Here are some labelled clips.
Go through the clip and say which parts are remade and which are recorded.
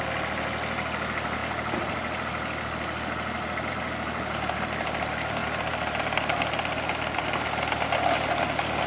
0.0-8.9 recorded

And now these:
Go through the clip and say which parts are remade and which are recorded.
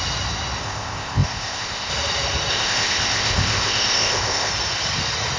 0.0-0.6 recorded; 0.6-1.9 remade; 1.9-2.5 recorded; 2.5-4.5 remade; 4.5-5.4 recorded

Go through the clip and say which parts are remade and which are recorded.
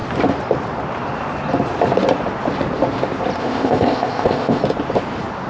0.0-3.4 recorded; 3.4-4.6 remade; 4.6-5.5 recorded